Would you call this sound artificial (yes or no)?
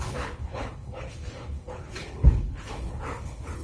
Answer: yes